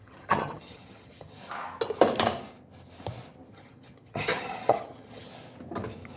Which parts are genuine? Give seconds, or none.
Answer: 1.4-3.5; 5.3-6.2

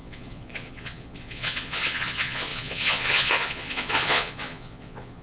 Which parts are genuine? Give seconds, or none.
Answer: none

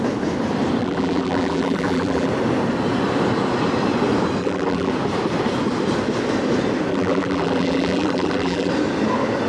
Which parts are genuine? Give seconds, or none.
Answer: 0.0-0.8; 2.3-4.4; 4.9-6.9; 8.7-9.5

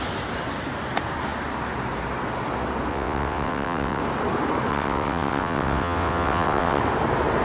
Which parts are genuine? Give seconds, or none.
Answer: 0.0-2.9; 4.0-4.7; 6.8-7.4

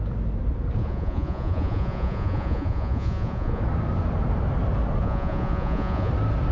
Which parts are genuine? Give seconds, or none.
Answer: 0.0-0.8; 3.6-5.0; 6.1-6.5

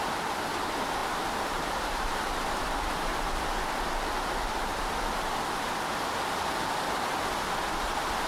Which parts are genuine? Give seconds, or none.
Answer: 0.0-1.0; 4.8-8.3